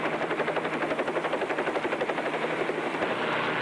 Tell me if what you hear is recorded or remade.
remade